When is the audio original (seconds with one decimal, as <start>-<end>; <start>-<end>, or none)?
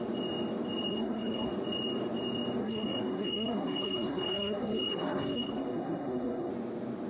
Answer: 0.0-0.9; 1.5-2.6; 6.5-7.1